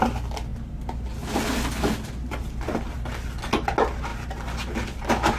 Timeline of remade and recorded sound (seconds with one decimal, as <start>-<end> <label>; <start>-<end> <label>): 0.0-5.4 recorded